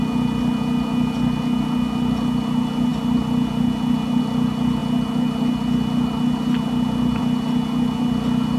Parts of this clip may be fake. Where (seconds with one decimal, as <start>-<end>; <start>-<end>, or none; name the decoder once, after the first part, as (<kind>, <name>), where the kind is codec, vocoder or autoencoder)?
none